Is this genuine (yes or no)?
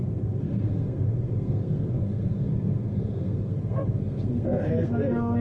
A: no